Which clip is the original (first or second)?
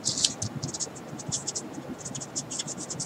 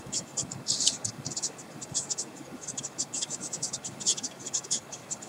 first